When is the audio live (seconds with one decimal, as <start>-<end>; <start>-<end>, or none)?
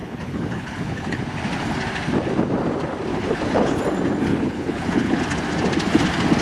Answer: 1.2-3.1; 3.8-4.3; 5.2-6.4